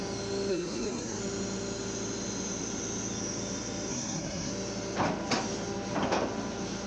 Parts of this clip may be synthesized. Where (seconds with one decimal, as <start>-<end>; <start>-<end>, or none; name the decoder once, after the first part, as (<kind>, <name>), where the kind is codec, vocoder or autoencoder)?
0.5-1.2 (codec, SNAC); 3.9-4.5